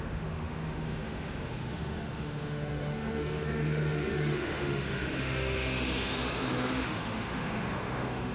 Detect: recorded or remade remade